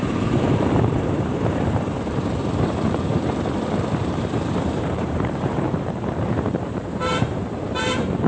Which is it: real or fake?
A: fake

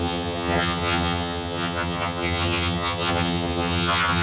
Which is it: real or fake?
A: fake